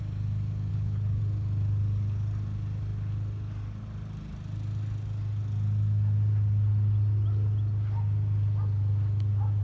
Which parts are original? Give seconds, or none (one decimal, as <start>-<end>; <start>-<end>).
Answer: 0.0-0.7; 1.2-9.6